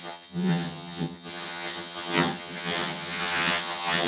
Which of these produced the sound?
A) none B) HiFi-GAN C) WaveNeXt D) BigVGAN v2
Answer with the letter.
B